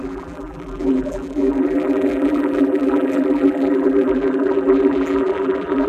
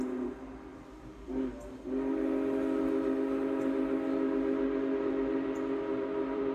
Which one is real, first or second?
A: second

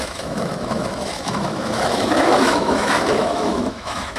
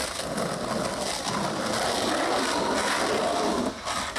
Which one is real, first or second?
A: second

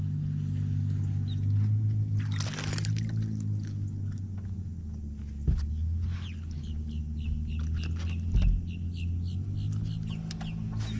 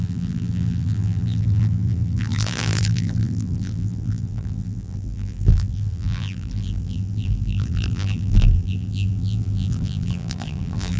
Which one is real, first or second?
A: first